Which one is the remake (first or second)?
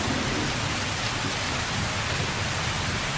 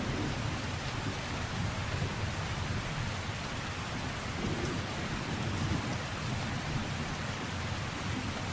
second